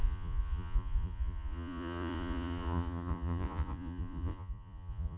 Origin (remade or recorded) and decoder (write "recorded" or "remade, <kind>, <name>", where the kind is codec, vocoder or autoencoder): remade, vocoder, Vocos